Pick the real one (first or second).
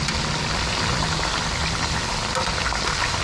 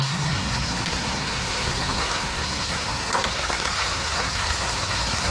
first